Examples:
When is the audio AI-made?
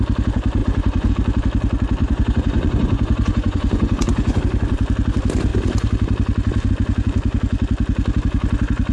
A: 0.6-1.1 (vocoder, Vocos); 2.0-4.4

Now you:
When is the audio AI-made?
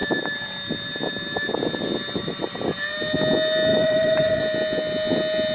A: 3.7-4.4 (vocoder, Vocos)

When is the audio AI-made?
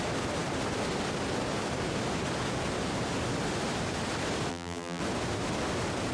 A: 4.5-5.0 (vocoder, BigVGAN v2)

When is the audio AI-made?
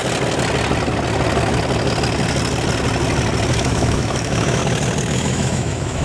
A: 3.5-4.6 (autoencoder, DAC-VAE); 5.1-6.0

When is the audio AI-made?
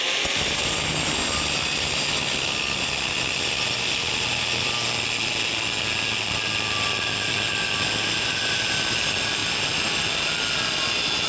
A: none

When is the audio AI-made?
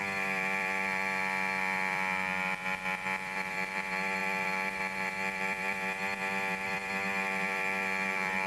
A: 0.0-8.5 (vocoder, BigVGAN v2)